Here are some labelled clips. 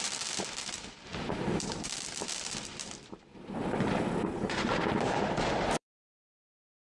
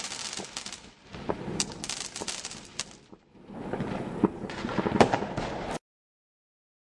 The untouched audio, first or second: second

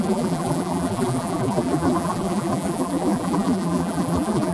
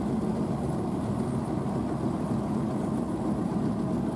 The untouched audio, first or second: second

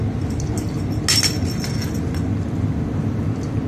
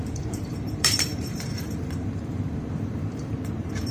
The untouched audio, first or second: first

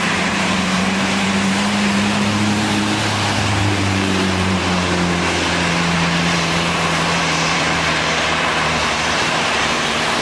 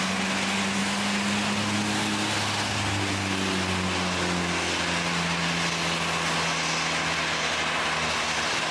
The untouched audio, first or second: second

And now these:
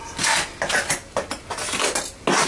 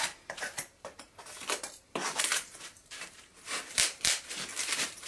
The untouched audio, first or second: first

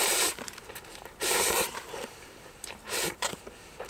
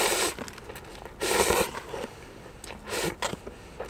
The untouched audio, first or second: second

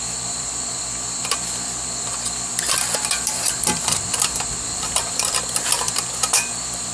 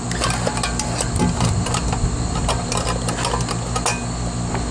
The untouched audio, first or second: second